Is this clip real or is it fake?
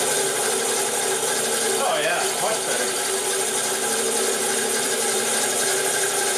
fake